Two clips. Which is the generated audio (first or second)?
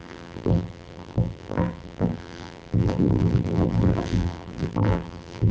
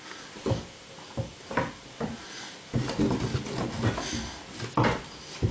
first